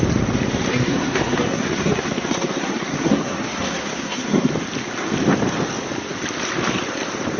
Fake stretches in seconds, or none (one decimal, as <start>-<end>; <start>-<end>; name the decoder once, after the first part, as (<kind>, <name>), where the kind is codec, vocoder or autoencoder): 0.7-4.5 (codec, SNAC)